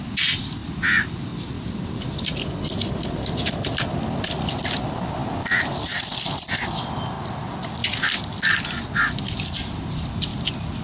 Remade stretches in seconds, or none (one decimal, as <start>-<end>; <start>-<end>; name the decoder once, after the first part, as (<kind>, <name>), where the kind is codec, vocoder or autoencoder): 5.5-6.9 (vocoder, BigVGAN v2)